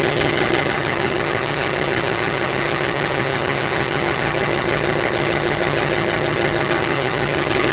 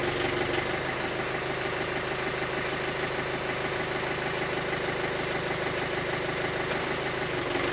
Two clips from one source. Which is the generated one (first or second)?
first